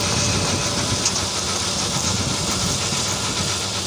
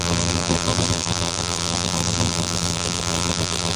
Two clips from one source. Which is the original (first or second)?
first